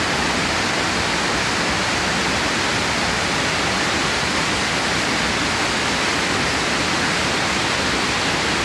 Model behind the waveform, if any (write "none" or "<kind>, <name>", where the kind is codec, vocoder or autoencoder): none